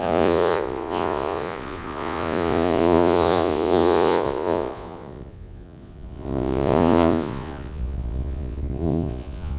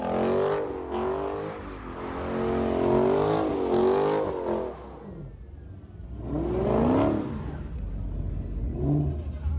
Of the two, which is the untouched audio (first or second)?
second